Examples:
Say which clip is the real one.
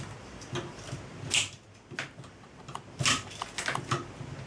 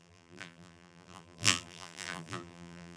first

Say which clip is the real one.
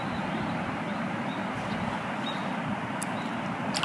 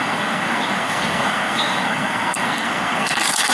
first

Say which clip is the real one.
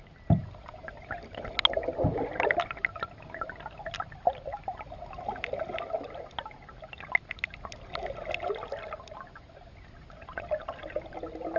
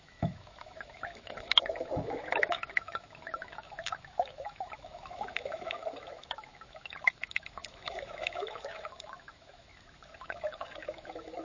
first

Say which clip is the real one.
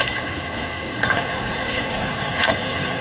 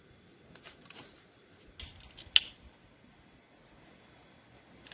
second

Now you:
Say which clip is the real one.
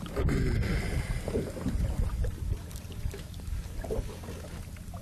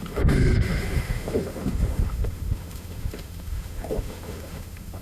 first